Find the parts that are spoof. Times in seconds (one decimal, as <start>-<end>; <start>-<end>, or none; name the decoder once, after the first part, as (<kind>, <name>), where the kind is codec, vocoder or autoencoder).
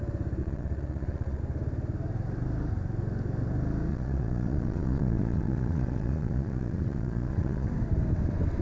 0.4-1.4 (vocoder, Vocos); 3.9-7.7